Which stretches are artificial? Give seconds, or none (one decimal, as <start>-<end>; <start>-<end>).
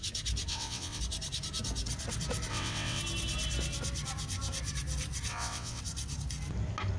0.5-1.0; 2.5-3.0; 5.3-5.8